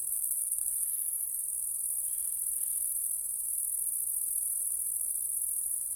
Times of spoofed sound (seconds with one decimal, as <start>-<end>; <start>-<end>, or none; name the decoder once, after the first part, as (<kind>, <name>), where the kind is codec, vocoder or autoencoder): 0.0-0.9 (codec, SNAC)